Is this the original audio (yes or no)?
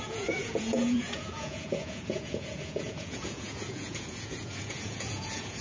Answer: no